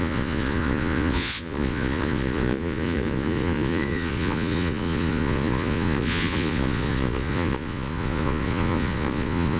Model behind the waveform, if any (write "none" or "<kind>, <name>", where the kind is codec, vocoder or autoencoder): vocoder, Vocos